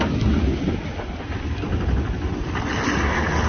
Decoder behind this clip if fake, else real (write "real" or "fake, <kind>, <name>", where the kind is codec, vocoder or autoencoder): real